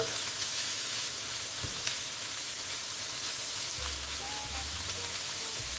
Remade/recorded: remade